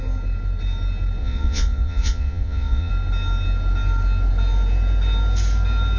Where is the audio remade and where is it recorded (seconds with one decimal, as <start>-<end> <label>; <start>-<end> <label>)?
0.0-1.2 recorded; 1.2-2.9 remade; 2.9-6.0 recorded